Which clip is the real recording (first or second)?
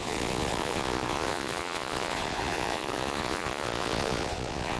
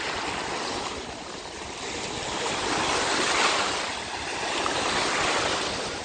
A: second